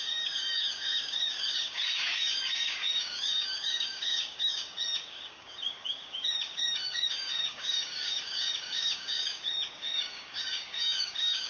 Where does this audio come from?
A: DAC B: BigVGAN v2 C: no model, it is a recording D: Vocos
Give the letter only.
A